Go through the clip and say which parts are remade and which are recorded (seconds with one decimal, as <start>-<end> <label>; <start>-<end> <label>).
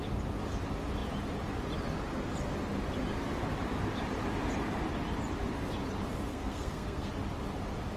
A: 0.0-6.3 recorded; 6.3-7.1 remade; 7.1-8.0 recorded